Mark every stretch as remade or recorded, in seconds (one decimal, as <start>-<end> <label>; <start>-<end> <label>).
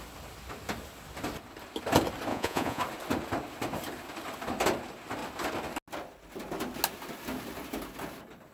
0.0-2.3 recorded; 2.3-2.8 remade; 2.8-8.5 recorded